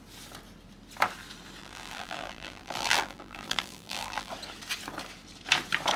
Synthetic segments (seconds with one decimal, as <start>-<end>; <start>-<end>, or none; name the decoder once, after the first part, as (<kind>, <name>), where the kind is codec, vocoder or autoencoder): 1.6-4.3 (vocoder, BigVGAN v2)